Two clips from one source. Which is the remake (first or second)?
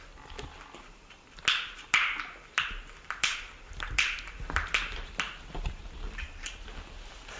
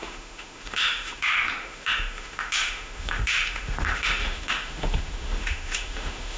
second